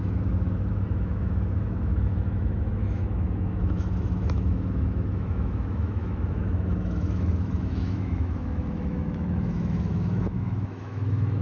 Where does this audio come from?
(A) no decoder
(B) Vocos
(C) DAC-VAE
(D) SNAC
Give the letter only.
C